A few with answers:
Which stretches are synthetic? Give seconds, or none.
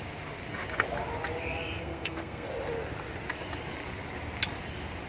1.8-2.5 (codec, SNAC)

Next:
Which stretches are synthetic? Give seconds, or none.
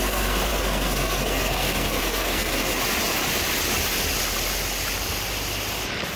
0.0-2.7 (codec, SNAC)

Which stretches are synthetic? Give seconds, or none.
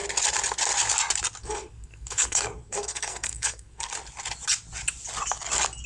1.4-3.9 (codec, SNAC)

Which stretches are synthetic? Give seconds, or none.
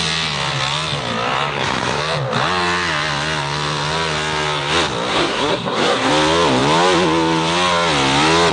1.5-2.0 (codec, SNAC); 5.1-6.1